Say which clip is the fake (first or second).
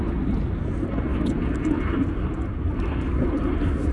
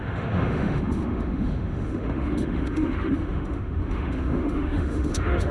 second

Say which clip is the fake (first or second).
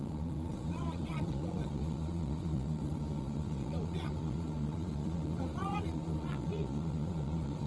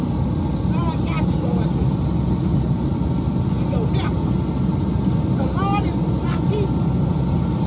first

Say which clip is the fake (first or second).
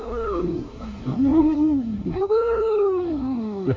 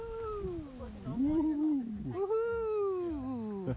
first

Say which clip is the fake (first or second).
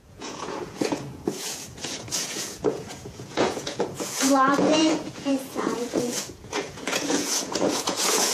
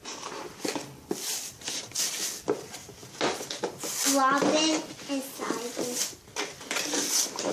first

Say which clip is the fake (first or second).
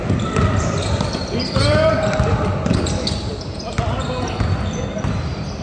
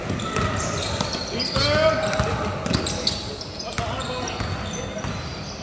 first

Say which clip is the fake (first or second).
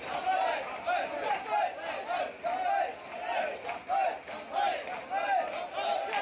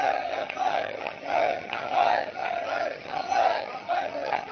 second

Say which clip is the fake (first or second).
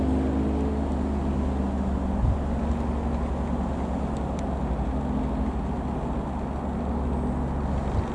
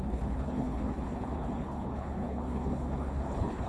second